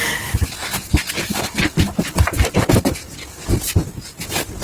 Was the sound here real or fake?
real